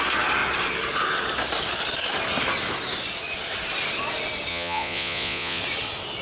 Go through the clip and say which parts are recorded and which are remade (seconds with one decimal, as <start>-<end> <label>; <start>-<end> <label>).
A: 0.0-4.5 recorded; 4.5-5.6 remade; 5.6-6.2 recorded